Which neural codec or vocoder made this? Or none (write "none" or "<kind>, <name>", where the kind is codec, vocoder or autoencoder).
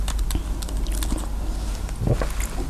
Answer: none